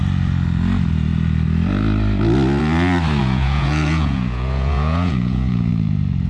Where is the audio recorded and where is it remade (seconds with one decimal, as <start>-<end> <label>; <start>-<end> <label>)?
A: 0.0-3.2 recorded; 3.2-5.7 remade; 5.7-6.3 recorded